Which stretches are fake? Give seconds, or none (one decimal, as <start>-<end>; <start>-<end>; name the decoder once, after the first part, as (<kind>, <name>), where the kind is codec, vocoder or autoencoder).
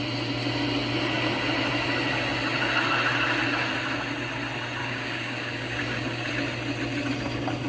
4.8-6.3 (codec, DAC)